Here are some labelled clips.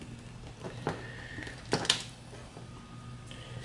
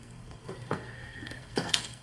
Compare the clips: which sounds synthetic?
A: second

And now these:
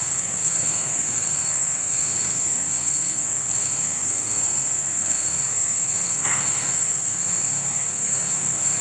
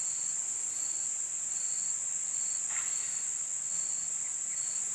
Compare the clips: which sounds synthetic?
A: first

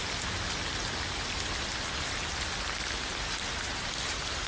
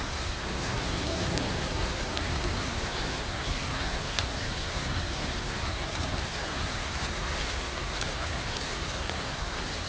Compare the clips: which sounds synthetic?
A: second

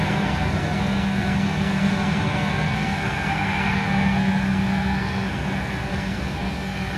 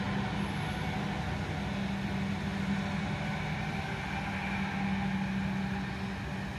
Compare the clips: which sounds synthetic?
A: first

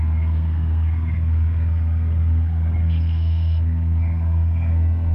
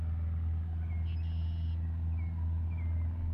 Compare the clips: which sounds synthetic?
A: first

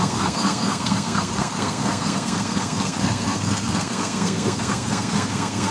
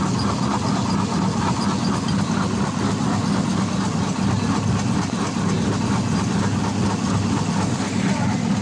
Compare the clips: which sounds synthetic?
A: first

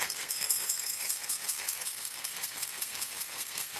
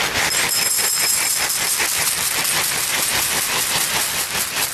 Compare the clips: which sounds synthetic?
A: first